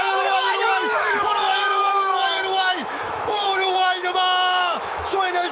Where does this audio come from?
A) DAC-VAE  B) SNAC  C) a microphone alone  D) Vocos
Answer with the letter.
A